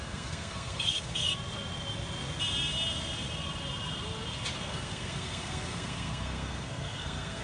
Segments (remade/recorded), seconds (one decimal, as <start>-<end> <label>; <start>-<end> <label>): 0.0-1.3 remade; 1.3-4.6 recorded; 4.6-7.4 remade